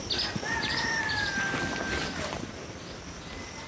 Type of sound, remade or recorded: recorded